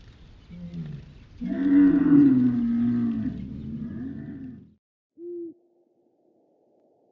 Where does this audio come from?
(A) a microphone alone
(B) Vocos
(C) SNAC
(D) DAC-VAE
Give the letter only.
A